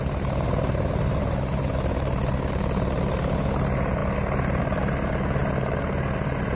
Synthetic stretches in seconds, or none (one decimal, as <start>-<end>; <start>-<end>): none